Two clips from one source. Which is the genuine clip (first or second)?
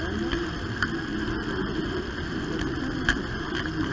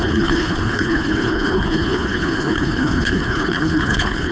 first